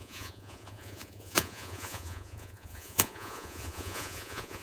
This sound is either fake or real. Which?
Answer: fake